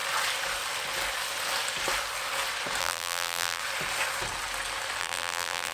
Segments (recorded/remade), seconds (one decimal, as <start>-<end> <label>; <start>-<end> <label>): 0.0-2.8 recorded; 2.8-3.6 remade; 3.6-5.0 recorded; 5.0-5.7 remade